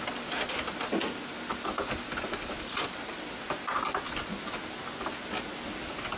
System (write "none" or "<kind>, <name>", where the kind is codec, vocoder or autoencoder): none